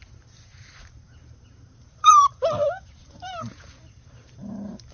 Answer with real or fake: fake